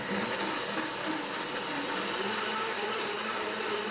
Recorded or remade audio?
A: recorded